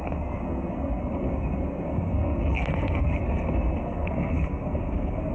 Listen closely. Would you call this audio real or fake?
fake